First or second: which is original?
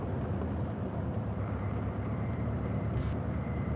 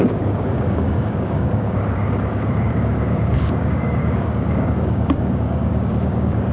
first